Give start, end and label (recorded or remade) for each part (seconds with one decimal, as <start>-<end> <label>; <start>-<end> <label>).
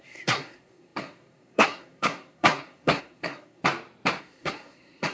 0.0-3.6 remade; 3.6-4.2 recorded; 4.2-5.1 remade